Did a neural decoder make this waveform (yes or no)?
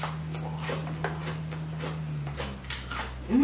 no